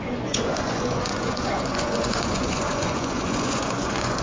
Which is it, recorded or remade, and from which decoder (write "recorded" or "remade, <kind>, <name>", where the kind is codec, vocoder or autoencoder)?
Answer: remade, vocoder, Vocos